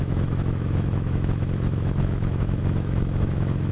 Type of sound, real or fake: fake